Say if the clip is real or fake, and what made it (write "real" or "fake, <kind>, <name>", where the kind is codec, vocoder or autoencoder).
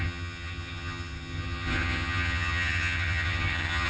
fake, vocoder, HiFi-GAN